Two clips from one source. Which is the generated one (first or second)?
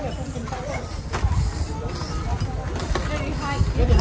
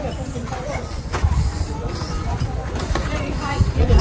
second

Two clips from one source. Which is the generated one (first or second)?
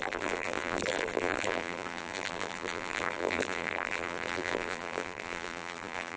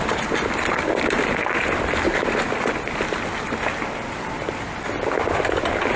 first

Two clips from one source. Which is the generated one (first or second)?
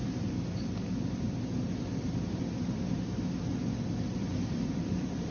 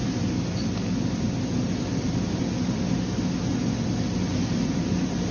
first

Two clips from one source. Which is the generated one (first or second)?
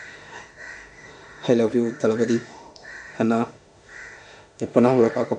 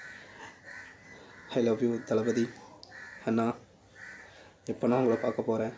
first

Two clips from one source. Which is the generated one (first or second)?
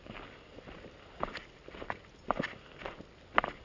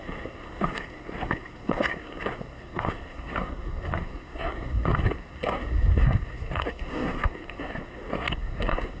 second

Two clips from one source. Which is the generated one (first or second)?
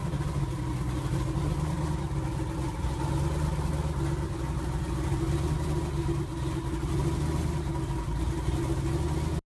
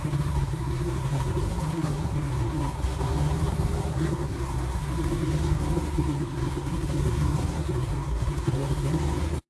second